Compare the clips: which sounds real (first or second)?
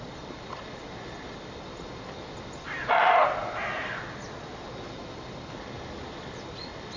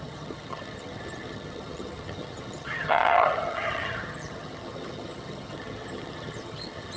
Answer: first